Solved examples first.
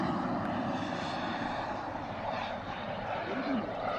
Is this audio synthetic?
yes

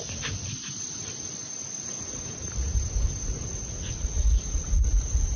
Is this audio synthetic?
no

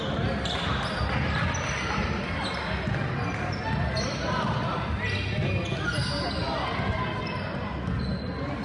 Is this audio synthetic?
no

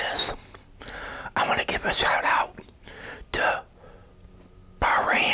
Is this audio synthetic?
no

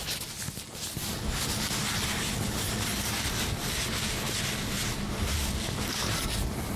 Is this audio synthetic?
no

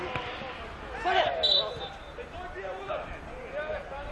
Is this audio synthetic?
no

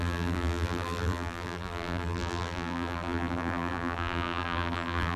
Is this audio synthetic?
yes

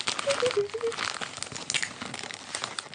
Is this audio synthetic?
no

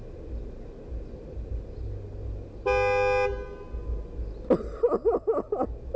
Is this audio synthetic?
no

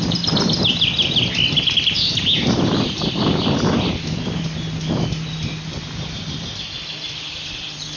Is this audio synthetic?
yes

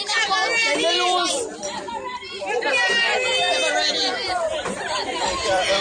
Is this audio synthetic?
yes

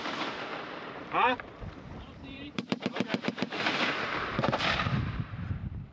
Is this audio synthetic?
yes